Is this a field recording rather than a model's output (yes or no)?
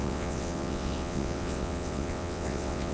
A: no